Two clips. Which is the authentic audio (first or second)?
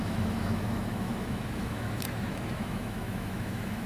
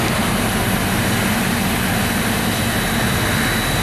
second